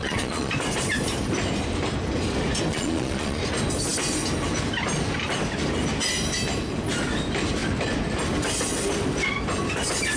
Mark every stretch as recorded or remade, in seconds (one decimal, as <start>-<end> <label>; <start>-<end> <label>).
0.0-0.5 remade; 0.5-2.7 recorded; 2.7-3.4 remade; 3.4-10.2 recorded